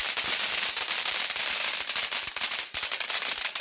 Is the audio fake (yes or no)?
yes